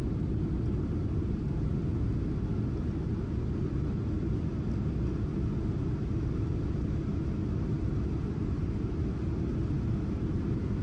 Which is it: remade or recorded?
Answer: recorded